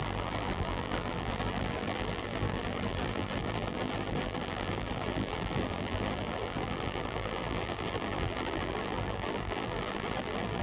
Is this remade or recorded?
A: remade